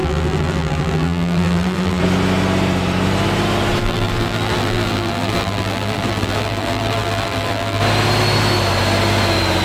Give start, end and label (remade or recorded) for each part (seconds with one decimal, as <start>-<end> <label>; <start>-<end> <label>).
0.0-2.0 remade; 2.0-3.8 recorded; 3.8-7.8 remade; 7.8-9.6 recorded